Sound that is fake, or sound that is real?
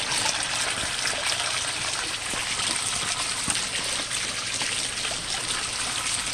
real